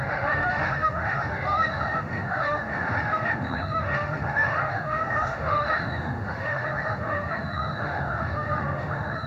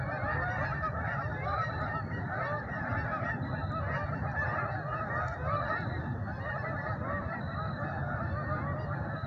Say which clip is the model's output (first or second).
first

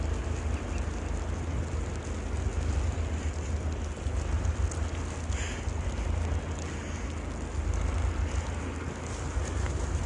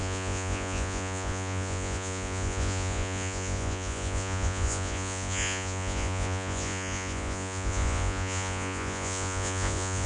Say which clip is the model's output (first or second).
second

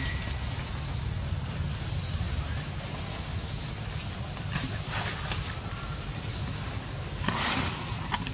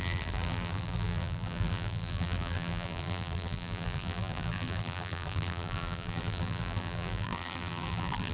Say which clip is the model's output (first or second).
second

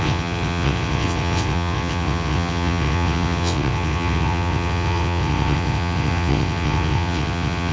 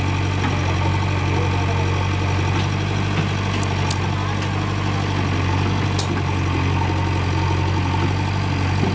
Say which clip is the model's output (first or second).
first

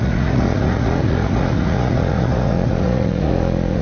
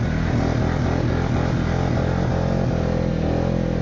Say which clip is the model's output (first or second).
first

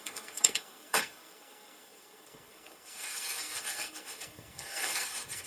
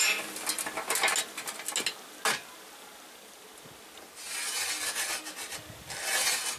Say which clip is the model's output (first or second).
first